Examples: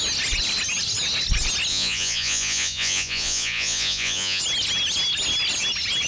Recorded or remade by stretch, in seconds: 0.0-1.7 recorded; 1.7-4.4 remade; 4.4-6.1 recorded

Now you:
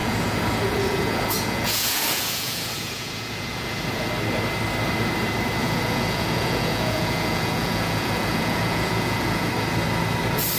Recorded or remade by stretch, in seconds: 0.0-4.1 remade; 4.1-5.6 recorded; 5.6-9.5 remade; 9.5-10.6 recorded

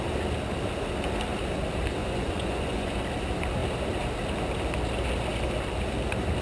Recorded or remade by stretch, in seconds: 0.0-2.0 recorded; 2.0-3.0 remade; 3.0-6.4 recorded

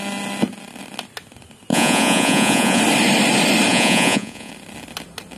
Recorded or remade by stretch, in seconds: 0.0-1.7 recorded; 1.7-2.8 remade; 2.8-3.7 recorded; 3.7-4.5 remade; 4.5-5.4 recorded